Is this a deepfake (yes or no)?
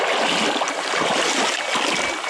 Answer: no